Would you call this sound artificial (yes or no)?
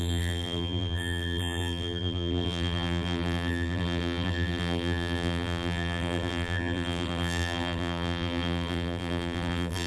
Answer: yes